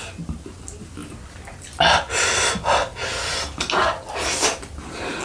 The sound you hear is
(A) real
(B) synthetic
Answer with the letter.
A